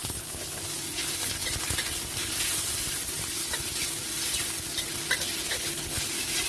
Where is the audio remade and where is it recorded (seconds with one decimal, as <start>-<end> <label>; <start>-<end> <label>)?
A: 0.0-0.6 remade; 0.6-5.5 recorded; 5.5-6.0 remade; 6.0-6.5 recorded

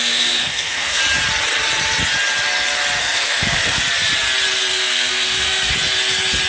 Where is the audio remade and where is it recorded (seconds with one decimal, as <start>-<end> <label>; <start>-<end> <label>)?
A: 0.0-1.0 remade; 1.0-3.0 recorded; 3.0-3.8 remade; 3.8-4.7 recorded; 4.7-5.7 remade; 5.7-6.5 recorded

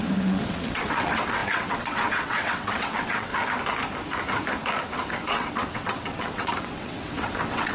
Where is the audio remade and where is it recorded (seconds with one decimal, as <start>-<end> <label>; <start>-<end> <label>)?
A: 0.0-3.3 remade; 3.3-5.1 recorded; 5.1-7.7 remade

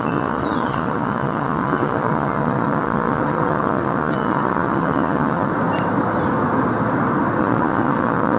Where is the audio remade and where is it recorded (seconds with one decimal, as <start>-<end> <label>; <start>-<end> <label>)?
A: 0.0-5.5 remade; 5.5-7.4 recorded; 7.4-8.4 remade